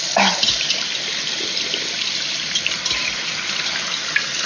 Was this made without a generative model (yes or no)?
yes